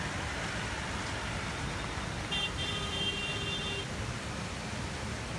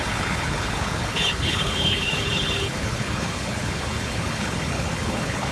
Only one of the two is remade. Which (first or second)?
second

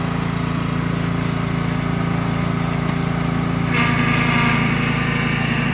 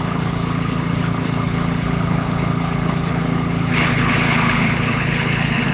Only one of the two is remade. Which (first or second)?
second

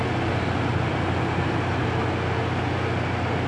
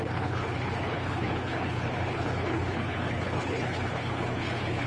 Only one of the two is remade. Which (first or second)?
second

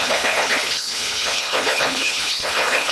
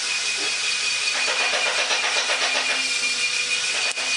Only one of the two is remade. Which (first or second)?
first